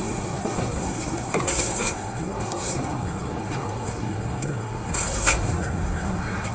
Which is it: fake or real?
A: fake